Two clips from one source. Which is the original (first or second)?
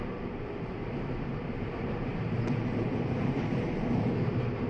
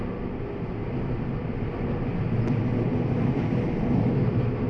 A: second